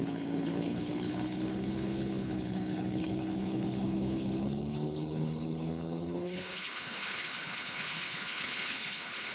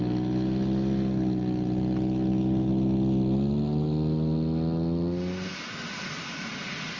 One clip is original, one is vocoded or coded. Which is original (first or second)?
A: second